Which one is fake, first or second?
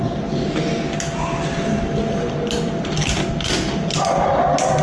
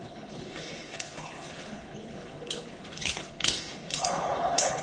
second